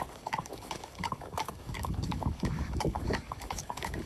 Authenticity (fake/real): fake